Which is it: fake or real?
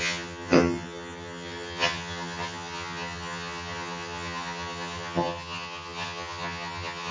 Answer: fake